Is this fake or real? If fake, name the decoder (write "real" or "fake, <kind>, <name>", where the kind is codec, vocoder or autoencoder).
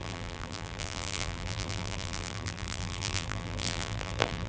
fake, vocoder, BigVGAN v2